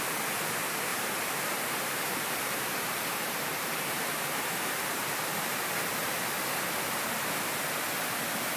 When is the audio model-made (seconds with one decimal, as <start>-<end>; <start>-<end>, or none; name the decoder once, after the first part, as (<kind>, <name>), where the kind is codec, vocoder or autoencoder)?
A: 0.9-5.8 (vocoder, BigVGAN v2)

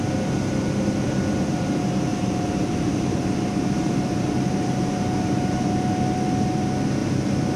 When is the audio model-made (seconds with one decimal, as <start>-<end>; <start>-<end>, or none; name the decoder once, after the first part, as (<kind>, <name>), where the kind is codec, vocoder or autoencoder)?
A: 2.1-5.7 (vocoder, BigVGAN v2)

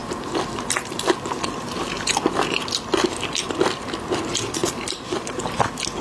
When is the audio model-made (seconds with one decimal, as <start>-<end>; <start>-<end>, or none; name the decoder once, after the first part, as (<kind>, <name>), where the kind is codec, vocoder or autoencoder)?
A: 0.0-3.6 (vocoder, BigVGAN v2); 4.6-6.0

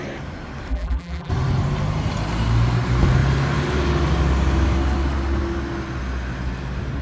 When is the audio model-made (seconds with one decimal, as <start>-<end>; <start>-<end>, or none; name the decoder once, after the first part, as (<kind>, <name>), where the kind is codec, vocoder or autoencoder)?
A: 0.7-1.3 (vocoder, BigVGAN v2)

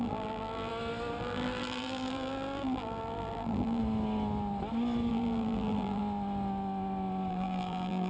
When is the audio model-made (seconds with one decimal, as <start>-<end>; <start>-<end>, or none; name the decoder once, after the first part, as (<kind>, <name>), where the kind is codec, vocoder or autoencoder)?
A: 0.0-0.7 (vocoder, BigVGAN v2); 1.2-3.8; 5.1-6.0; 7.3-8.1

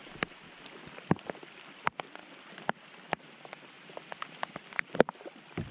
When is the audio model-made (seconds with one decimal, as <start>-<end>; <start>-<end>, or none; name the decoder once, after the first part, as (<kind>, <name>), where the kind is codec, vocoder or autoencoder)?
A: none

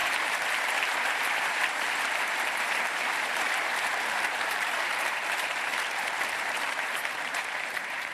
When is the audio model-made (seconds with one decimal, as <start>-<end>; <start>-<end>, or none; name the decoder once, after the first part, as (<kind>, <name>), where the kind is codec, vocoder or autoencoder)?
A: 0.0-5.7 (vocoder, BigVGAN v2); 6.3-8.1

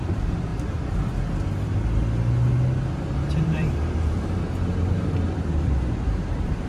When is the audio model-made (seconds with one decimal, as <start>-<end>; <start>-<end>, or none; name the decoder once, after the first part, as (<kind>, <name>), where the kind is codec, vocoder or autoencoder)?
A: 0.0-0.5 (vocoder, BigVGAN v2); 3.4-6.7